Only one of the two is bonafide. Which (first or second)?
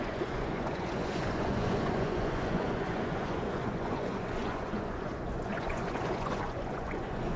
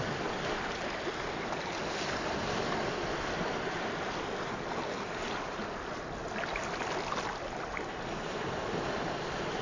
second